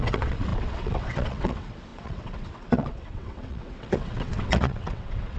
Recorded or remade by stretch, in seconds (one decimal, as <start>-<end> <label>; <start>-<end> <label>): 0.0-5.4 remade